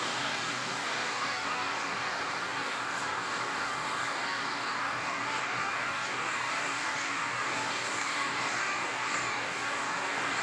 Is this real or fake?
fake